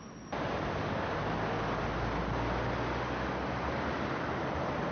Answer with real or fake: real